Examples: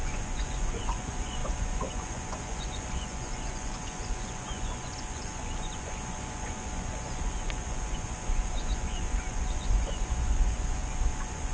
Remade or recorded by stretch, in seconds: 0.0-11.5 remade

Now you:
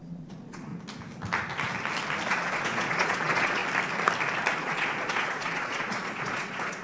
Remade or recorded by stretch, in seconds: 0.0-0.7 remade; 0.7-2.3 recorded; 2.3-3.6 remade; 3.6-4.6 recorded; 4.6-6.8 remade